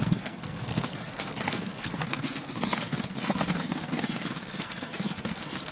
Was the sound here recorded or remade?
remade